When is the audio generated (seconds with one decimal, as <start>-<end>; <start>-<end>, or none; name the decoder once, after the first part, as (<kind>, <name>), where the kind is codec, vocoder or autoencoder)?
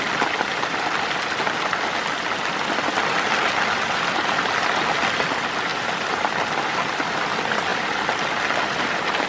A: 5.7-6.3 (vocoder, BigVGAN v2)